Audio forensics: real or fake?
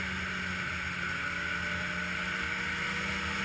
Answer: real